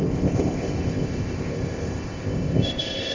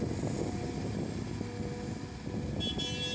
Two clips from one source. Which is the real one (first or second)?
second